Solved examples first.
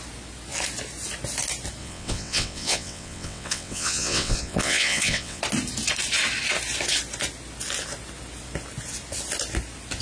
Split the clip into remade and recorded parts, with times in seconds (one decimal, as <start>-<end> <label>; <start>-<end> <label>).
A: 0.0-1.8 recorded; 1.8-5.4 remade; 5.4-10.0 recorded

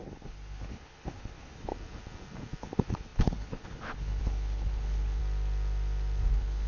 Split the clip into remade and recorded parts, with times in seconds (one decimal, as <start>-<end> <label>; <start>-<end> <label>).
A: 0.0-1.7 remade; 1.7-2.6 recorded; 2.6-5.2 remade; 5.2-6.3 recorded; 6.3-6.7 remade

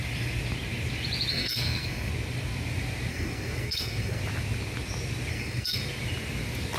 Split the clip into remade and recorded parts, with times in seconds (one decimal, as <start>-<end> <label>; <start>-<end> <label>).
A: 0.0-1.3 recorded; 1.3-2.1 remade; 2.1-3.1 recorded; 3.1-4.2 remade; 4.2-5.3 recorded; 5.3-5.8 remade; 5.8-6.8 recorded

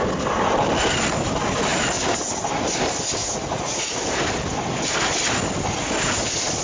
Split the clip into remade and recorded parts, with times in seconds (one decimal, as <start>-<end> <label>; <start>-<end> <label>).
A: 0.0-3.2 recorded; 3.2-4.0 remade; 4.0-6.6 recorded